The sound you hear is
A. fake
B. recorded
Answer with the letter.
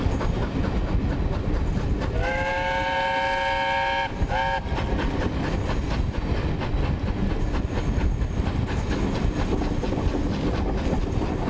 B